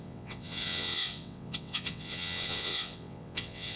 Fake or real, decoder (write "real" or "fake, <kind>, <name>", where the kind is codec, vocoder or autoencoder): fake, vocoder, WaveNeXt